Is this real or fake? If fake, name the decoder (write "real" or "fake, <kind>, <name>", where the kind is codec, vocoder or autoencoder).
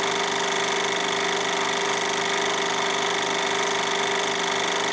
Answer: real